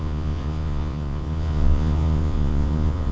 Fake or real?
fake